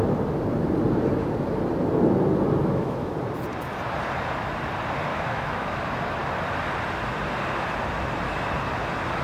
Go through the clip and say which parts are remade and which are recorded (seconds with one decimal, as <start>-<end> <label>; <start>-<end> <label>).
0.0-2.6 recorded; 2.6-3.1 remade; 3.1-5.1 recorded; 5.1-5.8 remade; 5.8-9.2 recorded